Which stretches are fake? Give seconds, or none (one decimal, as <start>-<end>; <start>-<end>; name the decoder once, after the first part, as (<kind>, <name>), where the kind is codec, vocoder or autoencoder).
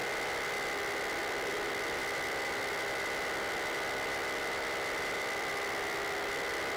none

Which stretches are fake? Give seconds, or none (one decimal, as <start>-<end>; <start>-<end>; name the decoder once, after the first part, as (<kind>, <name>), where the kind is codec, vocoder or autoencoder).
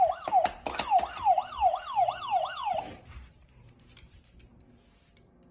1.4-4.7 (vocoder, BigVGAN v2)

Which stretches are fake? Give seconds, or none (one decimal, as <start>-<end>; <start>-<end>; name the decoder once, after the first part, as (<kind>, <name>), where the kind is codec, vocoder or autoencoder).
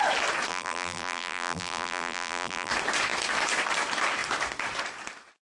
0.5-2.7 (vocoder, BigVGAN v2)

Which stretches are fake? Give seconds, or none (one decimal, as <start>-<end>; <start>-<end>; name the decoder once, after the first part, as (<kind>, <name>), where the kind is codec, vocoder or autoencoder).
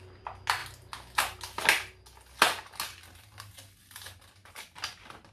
4.4-5.3 (vocoder, BigVGAN v2)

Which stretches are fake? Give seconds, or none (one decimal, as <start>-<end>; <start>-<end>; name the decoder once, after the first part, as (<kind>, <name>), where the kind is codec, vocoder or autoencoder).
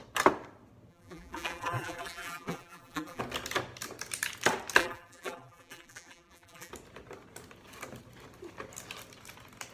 0.9-3.2 (vocoder, BigVGAN v2); 4.8-6.7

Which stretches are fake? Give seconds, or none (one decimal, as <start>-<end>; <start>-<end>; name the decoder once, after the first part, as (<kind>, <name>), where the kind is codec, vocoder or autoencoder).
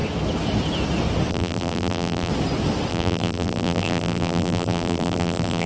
1.3-2.3 (vocoder, BigVGAN v2); 2.9-5.7